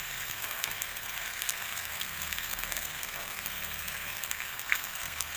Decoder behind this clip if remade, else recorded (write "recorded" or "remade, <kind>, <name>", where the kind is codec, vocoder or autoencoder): remade, codec, SNAC